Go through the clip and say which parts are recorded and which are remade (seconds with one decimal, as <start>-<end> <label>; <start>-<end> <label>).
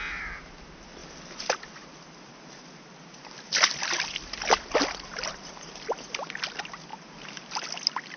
0.0-1.0 recorded; 1.0-5.9 remade; 5.9-8.2 recorded